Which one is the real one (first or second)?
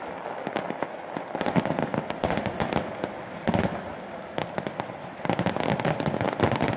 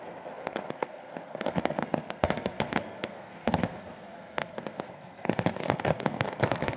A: first